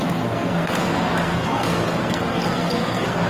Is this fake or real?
fake